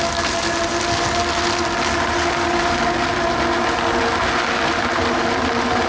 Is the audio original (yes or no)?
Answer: yes